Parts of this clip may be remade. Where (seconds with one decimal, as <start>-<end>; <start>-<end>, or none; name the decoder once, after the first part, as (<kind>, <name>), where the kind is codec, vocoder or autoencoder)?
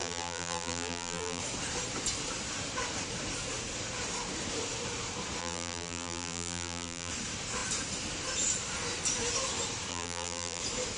0.0-1.4 (vocoder, BigVGAN v2); 5.4-7.1; 9.9-10.6